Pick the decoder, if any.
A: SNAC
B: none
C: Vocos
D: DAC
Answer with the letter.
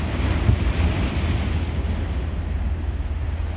B